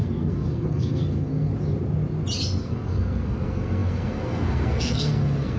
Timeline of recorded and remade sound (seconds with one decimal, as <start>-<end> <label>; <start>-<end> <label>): 0.0-1.5 remade; 1.5-2.6 recorded; 2.6-5.6 remade